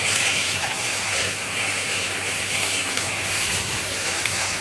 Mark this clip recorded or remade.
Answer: remade